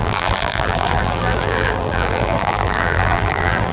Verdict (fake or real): fake